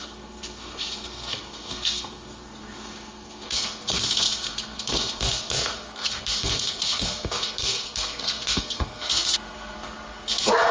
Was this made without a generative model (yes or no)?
no